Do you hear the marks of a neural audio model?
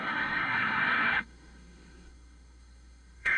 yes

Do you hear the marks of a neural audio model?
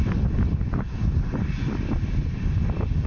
no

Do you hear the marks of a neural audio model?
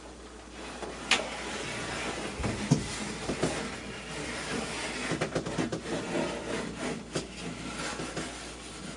no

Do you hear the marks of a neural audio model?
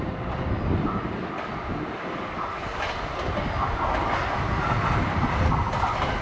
no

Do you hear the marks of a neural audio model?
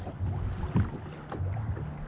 no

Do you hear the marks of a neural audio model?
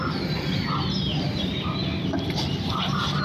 no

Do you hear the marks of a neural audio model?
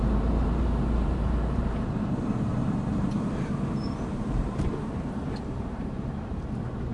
yes